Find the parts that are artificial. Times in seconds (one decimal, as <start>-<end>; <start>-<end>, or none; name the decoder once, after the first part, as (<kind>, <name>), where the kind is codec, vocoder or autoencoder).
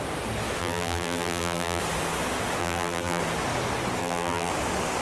0.6-1.8 (vocoder, BigVGAN v2); 2.6-3.2; 4.0-4.5